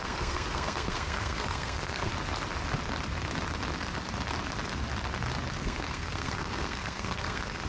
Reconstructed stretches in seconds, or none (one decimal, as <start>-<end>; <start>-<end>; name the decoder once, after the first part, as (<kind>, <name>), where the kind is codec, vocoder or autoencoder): 0.0-2.1 (codec, SNAC); 5.5-7.7